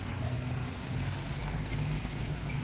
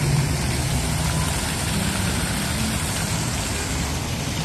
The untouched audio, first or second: second